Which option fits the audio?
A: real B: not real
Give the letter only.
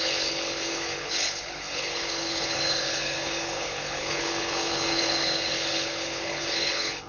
B